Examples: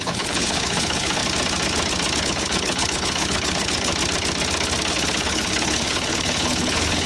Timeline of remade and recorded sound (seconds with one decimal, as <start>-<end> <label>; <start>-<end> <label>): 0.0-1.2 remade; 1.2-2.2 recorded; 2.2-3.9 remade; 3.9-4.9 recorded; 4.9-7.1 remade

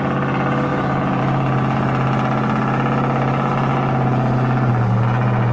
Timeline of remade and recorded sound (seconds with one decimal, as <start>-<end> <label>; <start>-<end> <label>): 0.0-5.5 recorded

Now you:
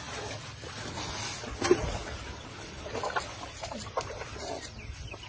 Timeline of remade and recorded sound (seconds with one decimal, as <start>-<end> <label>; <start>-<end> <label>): 0.0-1.8 recorded; 1.8-4.8 remade; 4.8-5.3 recorded

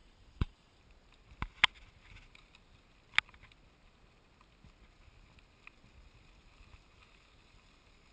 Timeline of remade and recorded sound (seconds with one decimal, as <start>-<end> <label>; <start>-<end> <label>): 0.0-0.8 remade; 0.8-8.1 recorded

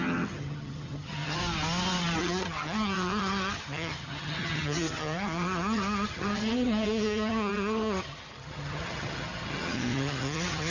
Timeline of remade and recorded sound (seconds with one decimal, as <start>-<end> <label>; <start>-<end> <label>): 0.0-1.4 remade; 1.4-2.2 recorded; 2.2-10.7 remade

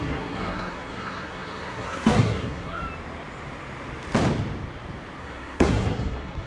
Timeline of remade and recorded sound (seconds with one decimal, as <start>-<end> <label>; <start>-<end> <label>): 0.0-2.8 remade; 2.8-5.2 recorded; 5.2-6.5 remade

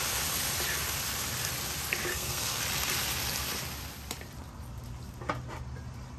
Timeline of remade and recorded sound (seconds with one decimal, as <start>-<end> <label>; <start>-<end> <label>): 0.0-2.1 recorded; 2.1-2.6 remade; 2.6-6.2 recorded

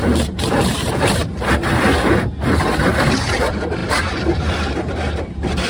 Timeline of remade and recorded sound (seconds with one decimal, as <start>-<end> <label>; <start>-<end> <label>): 0.0-1.2 remade; 1.2-3.2 recorded; 3.2-5.7 remade